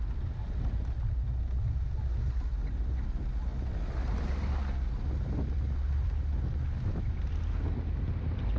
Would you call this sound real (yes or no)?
yes